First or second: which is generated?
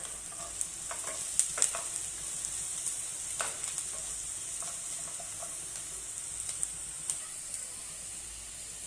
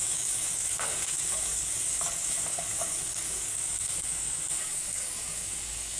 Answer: second